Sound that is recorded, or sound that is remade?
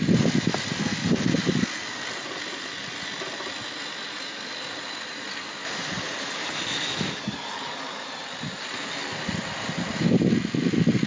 recorded